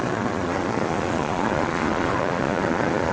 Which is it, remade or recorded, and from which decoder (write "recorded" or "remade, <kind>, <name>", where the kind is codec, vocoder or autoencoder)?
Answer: remade, vocoder, Vocos